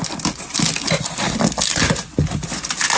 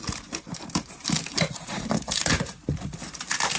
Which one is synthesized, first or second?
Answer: second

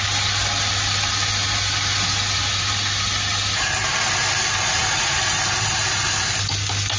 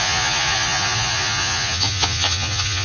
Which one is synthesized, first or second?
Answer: second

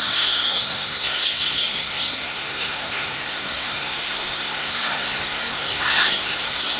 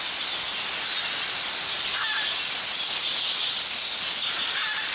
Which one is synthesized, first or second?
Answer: first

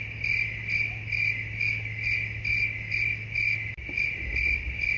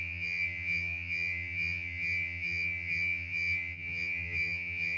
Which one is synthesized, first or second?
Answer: second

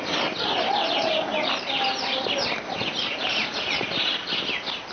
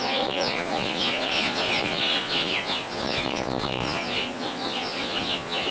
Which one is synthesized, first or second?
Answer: second